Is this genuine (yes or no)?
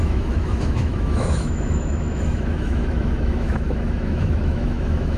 no